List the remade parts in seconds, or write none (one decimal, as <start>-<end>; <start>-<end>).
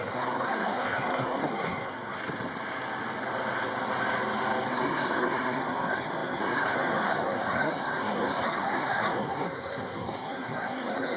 0.0-2.2; 4.7-11.2